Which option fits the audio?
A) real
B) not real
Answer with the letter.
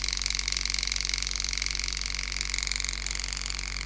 A